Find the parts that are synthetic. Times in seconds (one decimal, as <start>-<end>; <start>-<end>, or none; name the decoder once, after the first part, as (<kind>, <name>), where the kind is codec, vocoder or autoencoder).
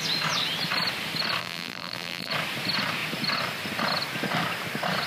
1.4-2.3 (vocoder, BigVGAN v2)